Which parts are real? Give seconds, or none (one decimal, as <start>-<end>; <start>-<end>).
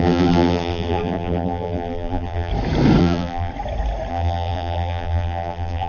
2.5-3.0; 3.5-4.1